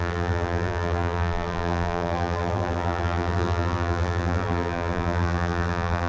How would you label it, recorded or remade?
remade